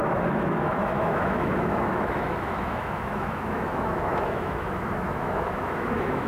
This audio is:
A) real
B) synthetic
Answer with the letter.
B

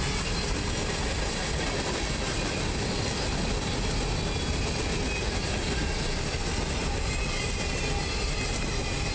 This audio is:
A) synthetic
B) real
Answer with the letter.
B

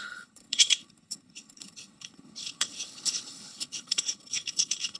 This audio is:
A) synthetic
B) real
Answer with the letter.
A